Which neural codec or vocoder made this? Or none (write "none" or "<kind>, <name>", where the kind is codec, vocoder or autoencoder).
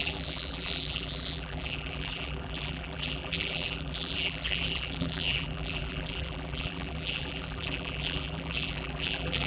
vocoder, BigVGAN v2